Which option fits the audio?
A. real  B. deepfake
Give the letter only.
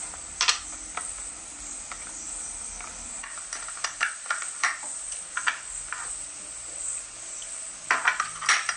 A